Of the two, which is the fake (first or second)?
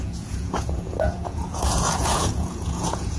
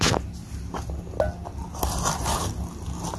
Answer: first